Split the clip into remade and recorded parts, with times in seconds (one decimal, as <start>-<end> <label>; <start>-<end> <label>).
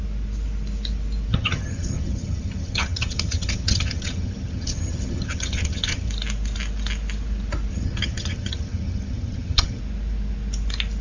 0.0-1.3 recorded; 1.3-6.1 remade; 6.1-7.7 recorded; 7.7-9.8 remade; 9.8-11.0 recorded